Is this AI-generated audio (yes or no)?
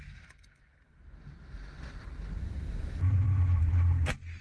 no